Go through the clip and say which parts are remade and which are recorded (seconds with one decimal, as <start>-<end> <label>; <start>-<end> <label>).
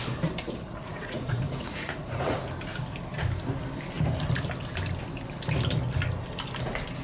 0.0-0.8 recorded; 0.8-2.5 remade; 2.5-7.0 recorded